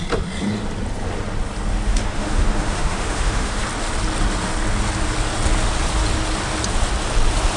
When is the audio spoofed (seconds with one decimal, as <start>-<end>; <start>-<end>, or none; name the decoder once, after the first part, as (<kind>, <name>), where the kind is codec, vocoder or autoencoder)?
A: 1.9-3.6 (autoencoder, DAC-VAE)